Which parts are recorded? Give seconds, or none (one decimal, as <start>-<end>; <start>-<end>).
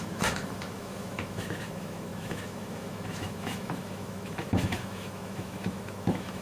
none